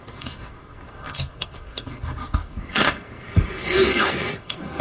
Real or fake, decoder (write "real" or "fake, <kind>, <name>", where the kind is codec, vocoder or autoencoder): fake, codec, SNAC